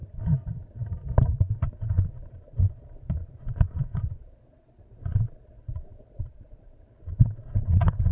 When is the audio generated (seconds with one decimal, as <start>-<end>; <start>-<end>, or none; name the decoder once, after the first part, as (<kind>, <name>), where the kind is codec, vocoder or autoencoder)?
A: 1.8-8.1 (vocoder, Vocos)